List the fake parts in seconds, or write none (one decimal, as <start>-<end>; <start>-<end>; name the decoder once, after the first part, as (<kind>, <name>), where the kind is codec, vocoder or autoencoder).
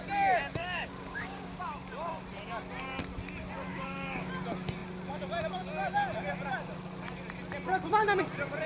0.6-1.6 (codec, DAC); 3.7-4.3